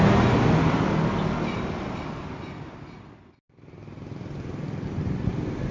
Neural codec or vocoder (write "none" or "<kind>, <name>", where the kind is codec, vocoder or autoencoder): none